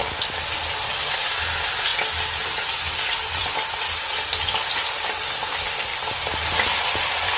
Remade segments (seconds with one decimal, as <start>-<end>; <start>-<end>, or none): 0.9-7.4